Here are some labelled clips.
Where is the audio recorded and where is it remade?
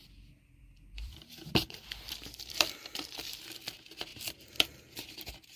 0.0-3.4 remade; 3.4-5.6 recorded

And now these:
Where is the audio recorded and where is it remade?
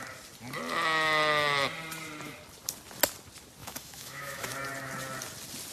0.0-3.6 recorded; 3.6-4.5 remade; 4.5-5.7 recorded